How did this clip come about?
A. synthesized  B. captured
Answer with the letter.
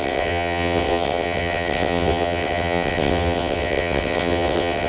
A